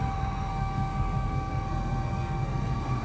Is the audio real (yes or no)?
no